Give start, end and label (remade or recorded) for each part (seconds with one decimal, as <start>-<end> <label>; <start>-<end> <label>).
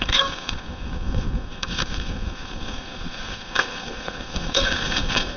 0.0-5.4 remade